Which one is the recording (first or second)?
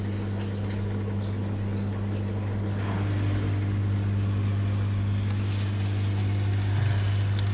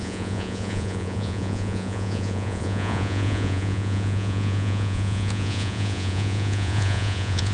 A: first